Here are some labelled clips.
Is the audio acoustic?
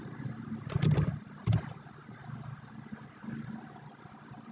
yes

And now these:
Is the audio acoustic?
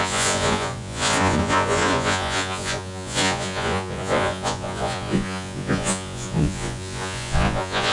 no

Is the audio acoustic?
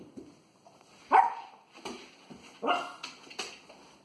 yes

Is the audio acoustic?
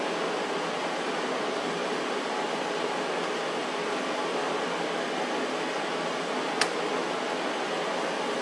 yes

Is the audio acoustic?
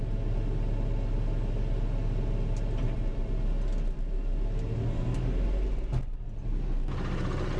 yes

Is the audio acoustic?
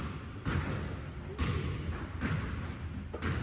yes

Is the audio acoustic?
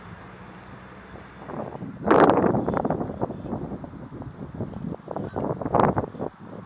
yes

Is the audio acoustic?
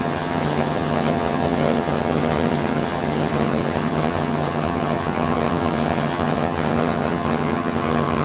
no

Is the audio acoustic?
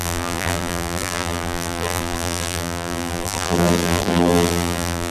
no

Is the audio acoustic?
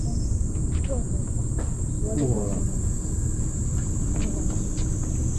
yes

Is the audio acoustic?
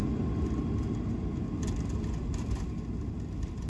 yes